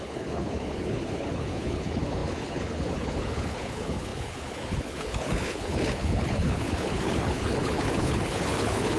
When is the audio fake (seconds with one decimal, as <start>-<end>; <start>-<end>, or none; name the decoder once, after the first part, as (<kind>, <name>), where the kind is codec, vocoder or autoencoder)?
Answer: 0.0-9.0 (codec, HILCodec)